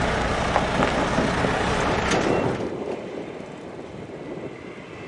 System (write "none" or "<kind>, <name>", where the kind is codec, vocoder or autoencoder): none